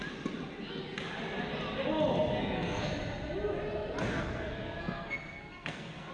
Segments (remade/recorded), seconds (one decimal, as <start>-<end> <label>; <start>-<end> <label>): 0.0-2.4 recorded; 2.4-2.9 remade; 2.9-4.1 recorded; 4.1-6.1 remade